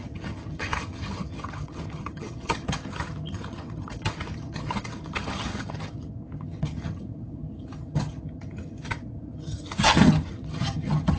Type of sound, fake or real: fake